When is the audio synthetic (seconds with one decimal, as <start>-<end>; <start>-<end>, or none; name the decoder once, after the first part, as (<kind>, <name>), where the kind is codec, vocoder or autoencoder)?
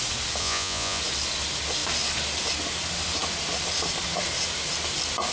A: 0.4-1.0 (vocoder, Vocos)